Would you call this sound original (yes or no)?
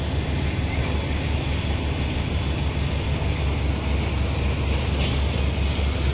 yes